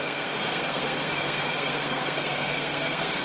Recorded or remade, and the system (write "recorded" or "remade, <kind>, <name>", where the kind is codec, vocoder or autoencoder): remade, codec, SNAC